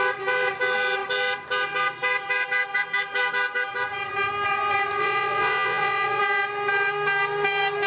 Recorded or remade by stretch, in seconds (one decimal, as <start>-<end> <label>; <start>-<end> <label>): 0.0-5.0 recorded; 5.0-6.2 remade; 6.2-7.9 recorded